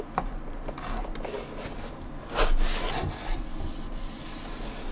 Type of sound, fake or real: real